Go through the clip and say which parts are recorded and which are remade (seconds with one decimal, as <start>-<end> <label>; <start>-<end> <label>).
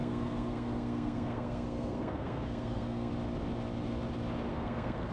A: 0.0-3.1 remade; 3.1-4.5 recorded; 4.5-5.1 remade